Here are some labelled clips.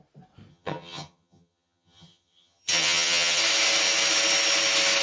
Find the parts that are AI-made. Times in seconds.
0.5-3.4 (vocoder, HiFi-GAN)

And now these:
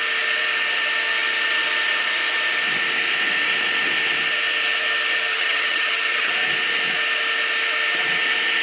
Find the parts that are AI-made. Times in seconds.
5.3-6.3 (vocoder, HiFi-GAN)

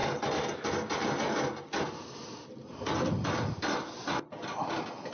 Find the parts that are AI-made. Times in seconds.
none